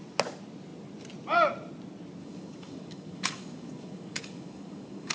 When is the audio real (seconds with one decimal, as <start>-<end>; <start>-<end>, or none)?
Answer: 0.0-2.2